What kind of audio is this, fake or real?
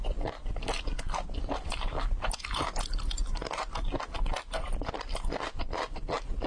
real